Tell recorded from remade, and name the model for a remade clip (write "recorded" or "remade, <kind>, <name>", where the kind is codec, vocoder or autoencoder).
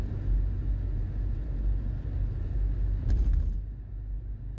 recorded